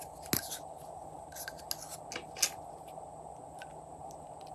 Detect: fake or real real